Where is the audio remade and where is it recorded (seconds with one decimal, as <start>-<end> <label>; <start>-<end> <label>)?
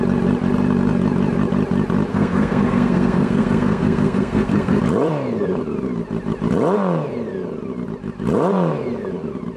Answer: 0.0-2.1 recorded; 2.1-4.8 remade; 4.8-9.6 recorded